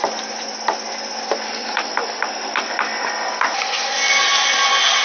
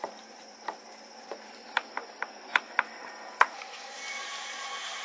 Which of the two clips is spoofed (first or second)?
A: second